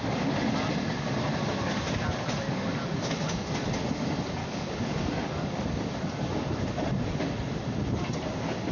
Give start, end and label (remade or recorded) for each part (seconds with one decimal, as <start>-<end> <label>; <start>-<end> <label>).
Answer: 0.0-4.4 recorded; 4.4-5.9 remade; 5.9-8.7 recorded

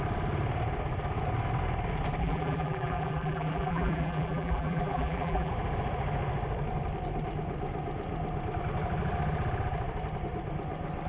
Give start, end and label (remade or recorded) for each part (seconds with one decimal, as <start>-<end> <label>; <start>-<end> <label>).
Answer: 0.0-2.2 recorded; 2.2-5.5 remade; 5.5-11.1 recorded

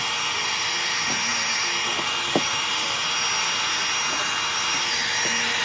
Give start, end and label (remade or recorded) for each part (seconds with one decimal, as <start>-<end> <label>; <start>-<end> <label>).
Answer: 0.0-5.6 recorded

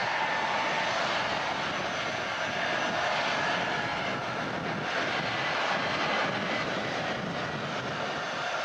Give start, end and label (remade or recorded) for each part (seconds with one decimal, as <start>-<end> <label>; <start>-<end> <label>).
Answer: 0.0-2.8 recorded; 2.8-3.9 remade; 3.9-7.8 recorded; 7.8-8.6 remade

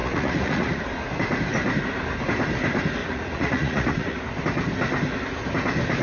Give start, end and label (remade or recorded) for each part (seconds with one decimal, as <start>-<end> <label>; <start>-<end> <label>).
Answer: 0.0-0.8 remade; 0.8-3.0 recorded; 3.0-4.2 remade; 4.2-6.0 recorded

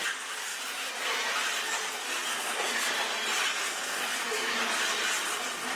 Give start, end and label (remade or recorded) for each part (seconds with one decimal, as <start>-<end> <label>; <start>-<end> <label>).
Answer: 0.0-2.0 recorded; 2.0-2.9 remade; 2.9-3.5 recorded; 3.5-4.5 remade; 4.5-5.8 recorded